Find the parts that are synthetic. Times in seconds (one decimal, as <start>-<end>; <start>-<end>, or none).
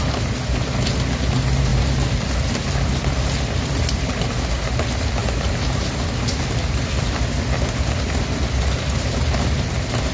none